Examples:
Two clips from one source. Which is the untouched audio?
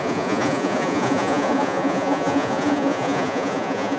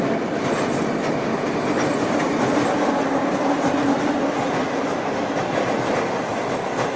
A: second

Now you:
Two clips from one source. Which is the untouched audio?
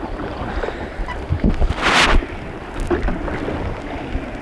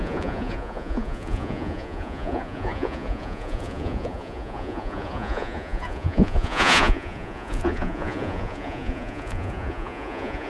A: first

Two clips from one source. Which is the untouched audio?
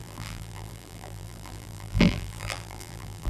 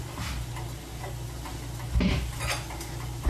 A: second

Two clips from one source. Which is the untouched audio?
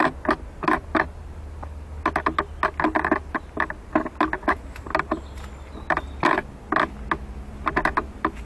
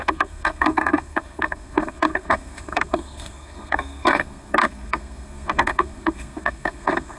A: first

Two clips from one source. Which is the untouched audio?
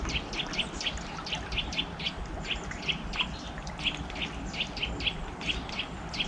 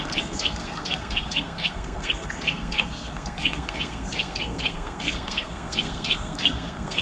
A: first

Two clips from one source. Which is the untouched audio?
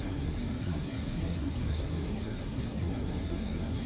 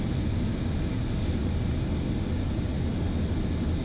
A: second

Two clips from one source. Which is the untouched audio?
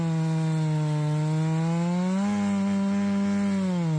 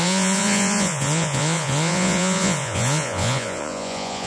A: first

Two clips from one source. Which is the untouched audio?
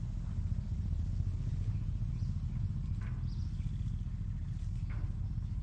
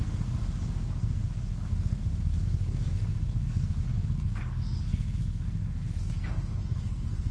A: first